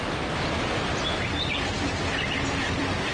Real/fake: fake